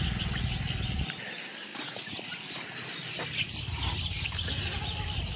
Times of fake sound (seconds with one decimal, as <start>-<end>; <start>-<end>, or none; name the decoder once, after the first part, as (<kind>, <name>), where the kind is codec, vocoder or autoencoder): none